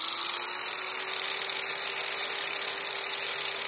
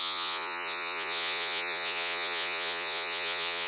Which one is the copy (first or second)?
second